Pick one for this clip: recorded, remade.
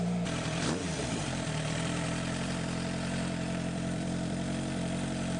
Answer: remade